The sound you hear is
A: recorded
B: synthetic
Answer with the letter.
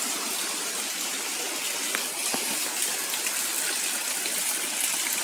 A